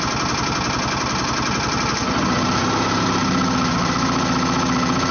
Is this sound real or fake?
real